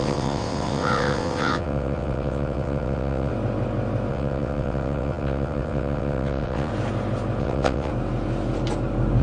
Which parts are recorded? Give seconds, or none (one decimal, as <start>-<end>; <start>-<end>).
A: 3.3-4.1; 6.7-7.4; 7.9-9.2